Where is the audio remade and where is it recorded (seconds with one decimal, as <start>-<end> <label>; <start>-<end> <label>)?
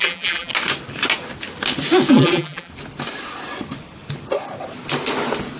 0.0-0.5 remade; 0.5-2.1 recorded; 2.1-2.7 remade; 2.7-5.6 recorded